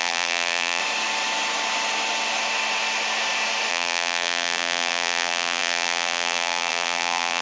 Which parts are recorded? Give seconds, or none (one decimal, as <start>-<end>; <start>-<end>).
0.8-3.7